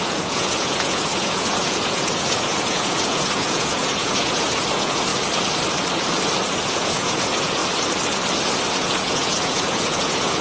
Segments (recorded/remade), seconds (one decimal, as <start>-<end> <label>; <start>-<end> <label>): 0.0-5.1 remade; 5.1-6.7 recorded; 6.7-7.6 remade; 7.6-8.7 recorded; 8.7-10.4 remade